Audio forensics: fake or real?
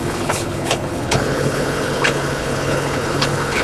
fake